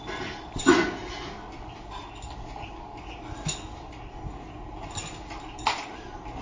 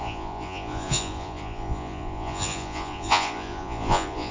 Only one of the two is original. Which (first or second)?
first